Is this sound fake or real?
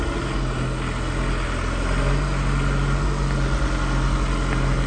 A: real